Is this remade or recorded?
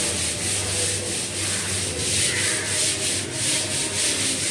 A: recorded